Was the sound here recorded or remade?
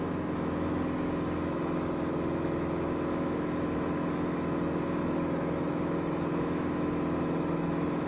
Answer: remade